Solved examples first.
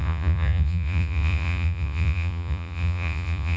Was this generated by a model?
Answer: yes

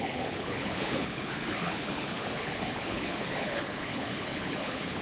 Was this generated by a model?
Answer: yes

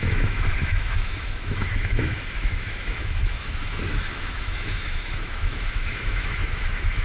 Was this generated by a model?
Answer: yes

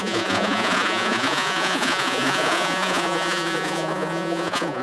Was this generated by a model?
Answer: yes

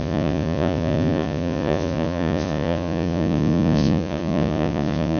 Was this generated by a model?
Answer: yes